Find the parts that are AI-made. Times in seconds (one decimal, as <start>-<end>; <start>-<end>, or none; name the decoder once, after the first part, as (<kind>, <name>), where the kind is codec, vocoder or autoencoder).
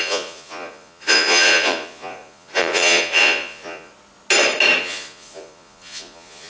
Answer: 0.0-3.9 (vocoder, Vocos); 4.8-6.5